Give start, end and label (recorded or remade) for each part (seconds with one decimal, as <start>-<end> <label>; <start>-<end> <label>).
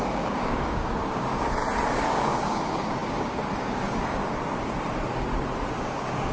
0.0-1.6 remade; 1.6-2.1 recorded; 2.1-4.2 remade; 4.2-5.7 recorded; 5.7-6.3 remade